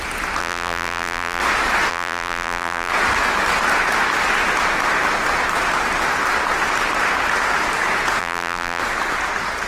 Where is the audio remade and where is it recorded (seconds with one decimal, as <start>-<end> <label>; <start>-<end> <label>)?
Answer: 0.0-0.4 recorded; 0.4-1.4 remade; 1.4-1.9 recorded; 1.9-2.9 remade; 2.9-8.2 recorded; 8.2-8.8 remade; 8.8-9.7 recorded